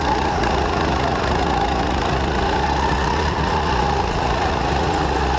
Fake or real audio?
fake